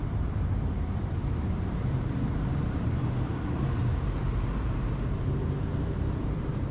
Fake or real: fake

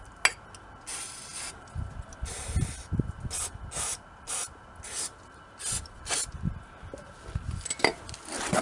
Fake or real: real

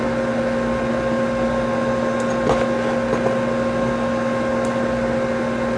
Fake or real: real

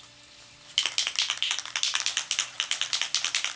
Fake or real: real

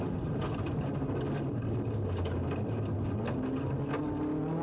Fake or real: real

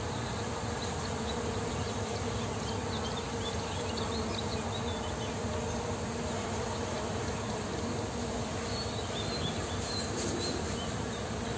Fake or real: real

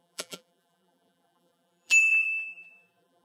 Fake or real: fake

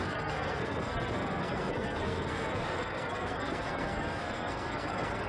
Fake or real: fake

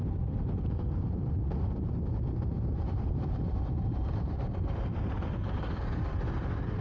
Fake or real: fake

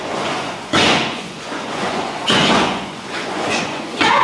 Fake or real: fake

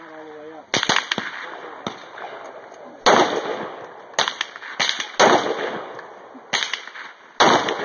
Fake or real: real